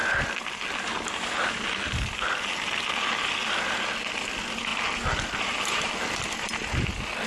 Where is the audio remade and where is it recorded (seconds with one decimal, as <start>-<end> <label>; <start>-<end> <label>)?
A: 0.0-7.3 recorded